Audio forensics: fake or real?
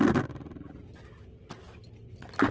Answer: real